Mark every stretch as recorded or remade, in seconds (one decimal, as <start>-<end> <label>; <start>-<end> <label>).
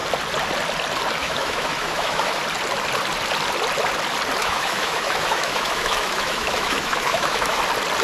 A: 0.0-1.2 recorded; 1.2-2.4 remade; 2.4-4.4 recorded; 4.4-7.6 remade; 7.6-8.0 recorded